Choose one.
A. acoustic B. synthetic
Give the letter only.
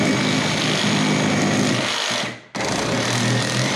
A